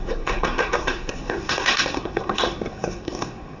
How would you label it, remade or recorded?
remade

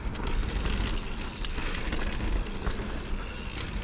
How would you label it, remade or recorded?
recorded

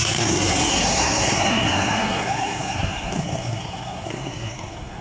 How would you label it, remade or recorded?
remade